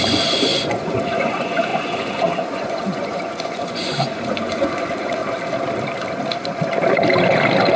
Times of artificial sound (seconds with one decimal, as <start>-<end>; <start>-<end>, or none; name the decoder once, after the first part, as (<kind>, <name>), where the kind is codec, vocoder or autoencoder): 0.0-5.2 (vocoder, Vocos)

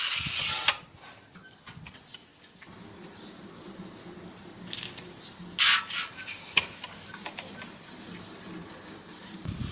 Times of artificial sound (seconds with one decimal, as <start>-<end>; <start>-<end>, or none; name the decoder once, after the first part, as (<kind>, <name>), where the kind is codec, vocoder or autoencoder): 8.6-9.2 (vocoder, BigVGAN v2)

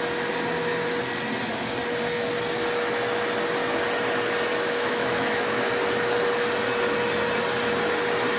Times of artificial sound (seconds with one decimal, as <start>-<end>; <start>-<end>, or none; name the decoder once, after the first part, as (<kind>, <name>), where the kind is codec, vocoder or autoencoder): 4.5-5.7 (autoencoder, DAC-VAE)

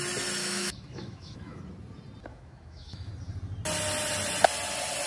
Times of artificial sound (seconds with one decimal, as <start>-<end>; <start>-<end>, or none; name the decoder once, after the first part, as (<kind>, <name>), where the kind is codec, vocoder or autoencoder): 0.4-1.6 (autoencoder, DAC-VAE); 2.3-3.1

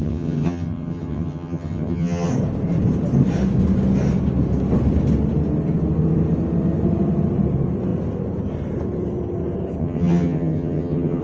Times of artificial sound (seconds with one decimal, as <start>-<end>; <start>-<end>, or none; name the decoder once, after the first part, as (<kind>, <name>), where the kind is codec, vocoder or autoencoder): 0.0-2.3 (vocoder, HiFi-GAN); 9.8-11.2

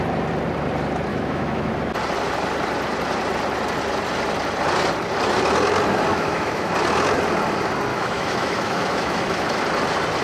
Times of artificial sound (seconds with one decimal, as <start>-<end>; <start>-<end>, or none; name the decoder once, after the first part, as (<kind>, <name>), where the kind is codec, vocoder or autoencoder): 1.1-1.7 (autoencoder, DAC-VAE); 6.1-6.7; 7.9-9.6

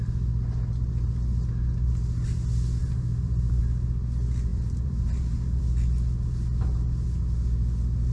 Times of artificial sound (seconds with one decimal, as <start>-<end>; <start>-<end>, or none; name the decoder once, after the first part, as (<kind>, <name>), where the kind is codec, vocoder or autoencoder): 2.8-3.6 (vocoder, BigVGAN v2); 4.5-5.6